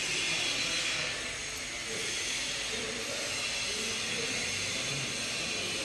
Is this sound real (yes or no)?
yes